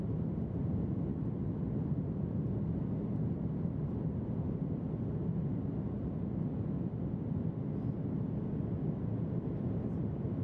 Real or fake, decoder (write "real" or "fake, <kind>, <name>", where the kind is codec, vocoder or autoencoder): real